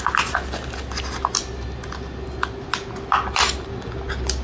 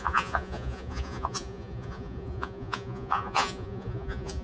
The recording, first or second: first